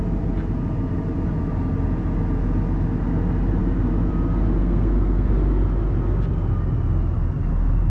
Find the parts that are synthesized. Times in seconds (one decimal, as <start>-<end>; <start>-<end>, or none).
4.6-5.3